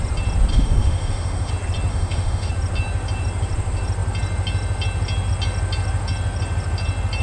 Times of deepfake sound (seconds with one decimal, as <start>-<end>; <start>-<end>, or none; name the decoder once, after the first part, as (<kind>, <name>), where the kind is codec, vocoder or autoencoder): 0.5-1.5 (autoencoder, DAC-VAE); 1.9-2.5